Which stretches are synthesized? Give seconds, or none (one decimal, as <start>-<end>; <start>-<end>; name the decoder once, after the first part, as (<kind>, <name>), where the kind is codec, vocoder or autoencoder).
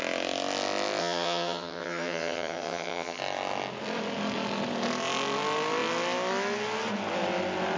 1.0-3.2 (vocoder, HiFi-GAN)